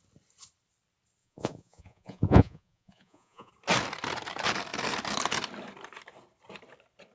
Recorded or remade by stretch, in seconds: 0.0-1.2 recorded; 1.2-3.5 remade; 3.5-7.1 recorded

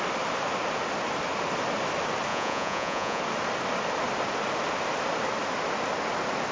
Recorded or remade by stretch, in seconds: 0.0-2.3 recorded; 2.3-3.2 remade; 3.2-6.5 recorded